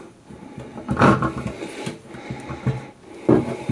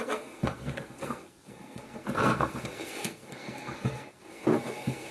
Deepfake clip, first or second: second